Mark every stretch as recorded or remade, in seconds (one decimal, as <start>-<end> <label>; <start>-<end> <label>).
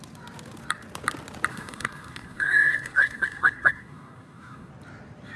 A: 0.0-1.5 recorded; 1.5-4.7 remade; 4.7-5.4 recorded